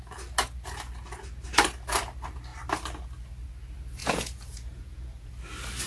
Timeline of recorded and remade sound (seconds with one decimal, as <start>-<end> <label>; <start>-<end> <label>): 0.0-4.0 recorded; 4.0-5.3 remade; 5.3-5.9 recorded